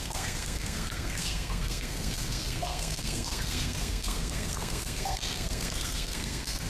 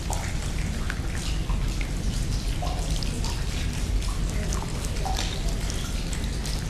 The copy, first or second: first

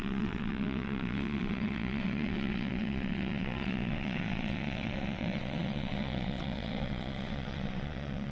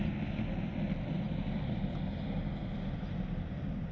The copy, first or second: first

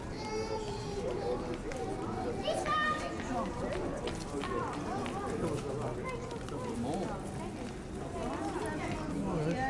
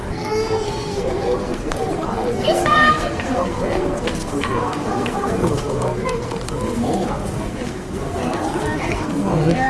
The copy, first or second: second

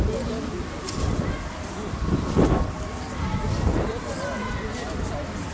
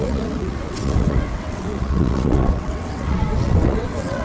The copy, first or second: second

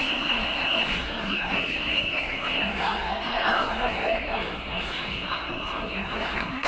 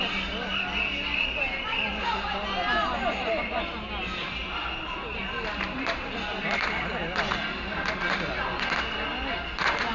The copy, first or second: first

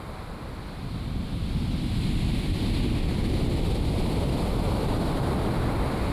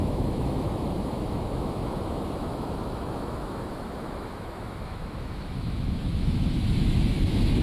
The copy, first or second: second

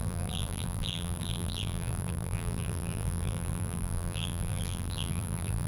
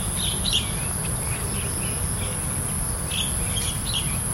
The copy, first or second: first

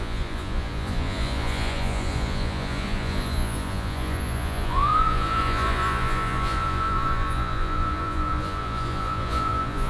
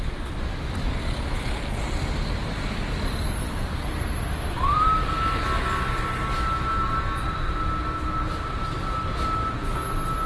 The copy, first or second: first